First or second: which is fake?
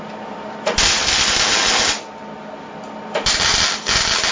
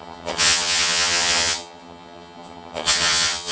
second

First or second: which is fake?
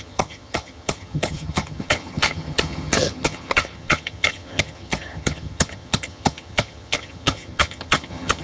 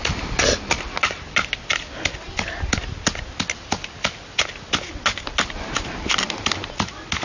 first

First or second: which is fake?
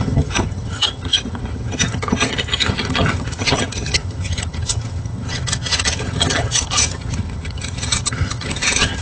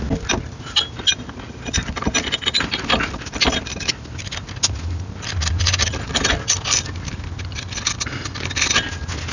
first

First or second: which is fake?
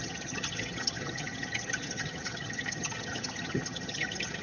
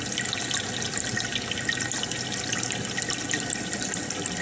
first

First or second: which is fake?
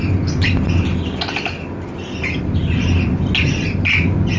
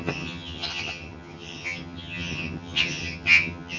second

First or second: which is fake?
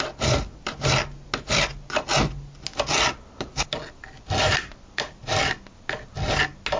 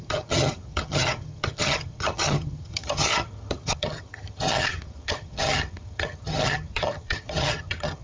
second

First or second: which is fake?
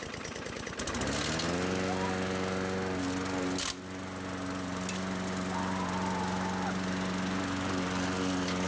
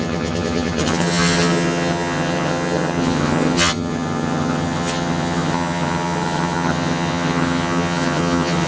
second